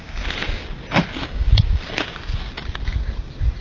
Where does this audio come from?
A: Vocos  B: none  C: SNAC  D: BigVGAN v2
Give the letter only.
B